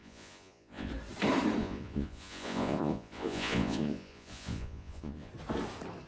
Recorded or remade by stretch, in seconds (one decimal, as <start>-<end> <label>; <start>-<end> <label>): 0.0-0.9 remade; 0.9-1.6 recorded; 1.6-5.3 remade; 5.3-6.1 recorded